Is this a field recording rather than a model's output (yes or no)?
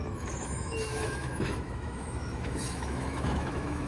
no